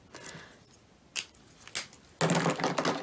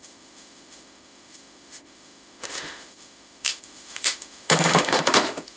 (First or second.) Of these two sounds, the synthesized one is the second